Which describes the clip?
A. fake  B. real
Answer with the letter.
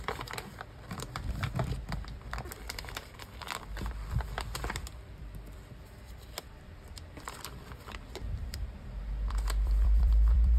A